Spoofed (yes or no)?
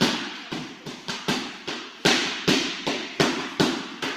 yes